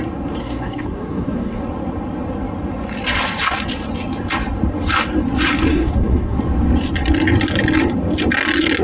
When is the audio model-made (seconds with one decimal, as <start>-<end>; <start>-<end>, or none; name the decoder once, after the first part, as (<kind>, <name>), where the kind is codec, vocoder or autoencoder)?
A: 0.4-1.6 (codec, SNAC); 5.7-6.4